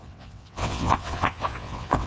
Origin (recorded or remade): remade